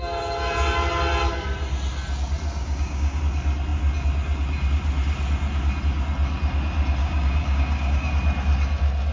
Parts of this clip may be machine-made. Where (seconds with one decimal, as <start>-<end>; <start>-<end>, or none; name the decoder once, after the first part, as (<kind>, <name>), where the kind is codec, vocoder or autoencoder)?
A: 2.6-3.2 (codec, DAC); 7.0-8.1